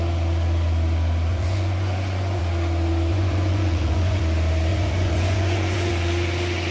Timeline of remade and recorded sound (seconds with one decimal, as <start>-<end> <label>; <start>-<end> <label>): 0.0-1.3 recorded; 1.3-2.4 remade; 2.4-3.1 recorded; 3.1-4.2 remade; 4.2-4.7 recorded; 4.7-5.9 remade; 5.9-6.7 recorded